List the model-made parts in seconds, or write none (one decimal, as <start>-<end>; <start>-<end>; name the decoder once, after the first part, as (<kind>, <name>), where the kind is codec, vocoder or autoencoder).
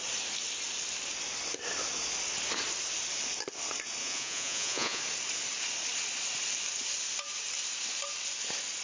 4.0-5.0 (vocoder, Vocos)